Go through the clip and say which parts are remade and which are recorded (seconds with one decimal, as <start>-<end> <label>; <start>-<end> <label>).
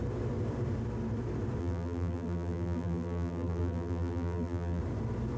0.0-1.6 recorded; 1.6-4.8 remade; 4.8-5.4 recorded